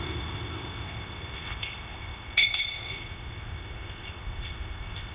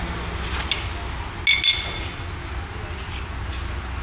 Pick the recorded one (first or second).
second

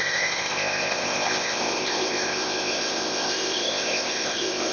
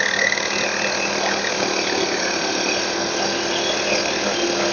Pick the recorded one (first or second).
second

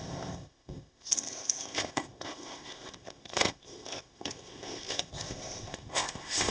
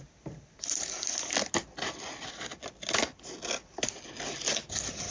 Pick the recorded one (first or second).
second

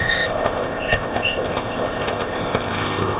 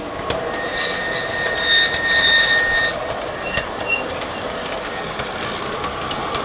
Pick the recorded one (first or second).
second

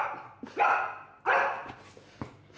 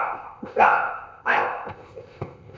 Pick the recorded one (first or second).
first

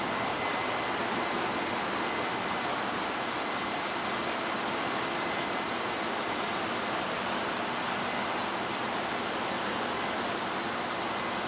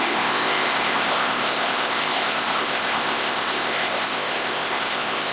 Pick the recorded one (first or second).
first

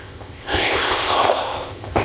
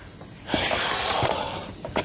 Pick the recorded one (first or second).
second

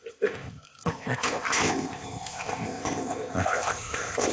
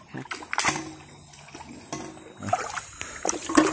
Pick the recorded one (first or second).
second